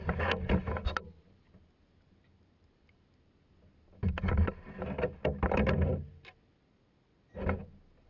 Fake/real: real